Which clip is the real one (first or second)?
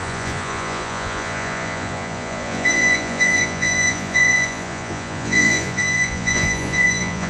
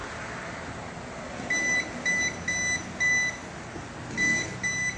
second